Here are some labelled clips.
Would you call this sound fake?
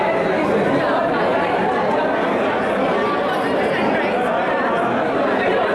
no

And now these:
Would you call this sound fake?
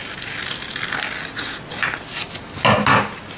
no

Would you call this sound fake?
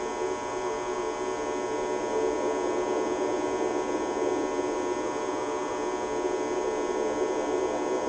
no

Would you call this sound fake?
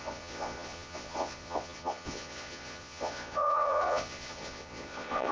yes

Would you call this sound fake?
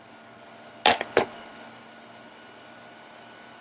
no